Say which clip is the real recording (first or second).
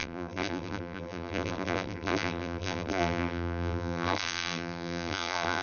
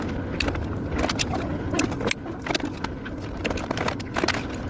second